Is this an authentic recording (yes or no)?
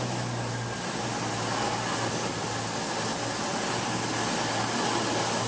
yes